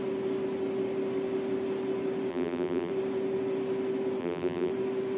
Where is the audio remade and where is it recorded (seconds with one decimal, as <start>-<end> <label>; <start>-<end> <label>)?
0.0-2.3 recorded; 2.3-2.9 remade; 2.9-4.2 recorded; 4.2-4.7 remade; 4.7-5.2 recorded